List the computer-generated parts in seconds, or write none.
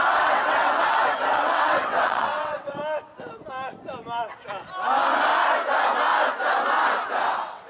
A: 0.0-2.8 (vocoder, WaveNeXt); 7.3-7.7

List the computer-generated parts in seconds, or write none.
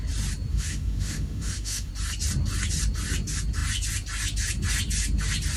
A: 0.5-1.9 (autoencoder, DAC-VAE)